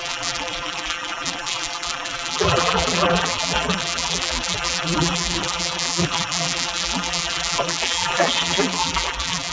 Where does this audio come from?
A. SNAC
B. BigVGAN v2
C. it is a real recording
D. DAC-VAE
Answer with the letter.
B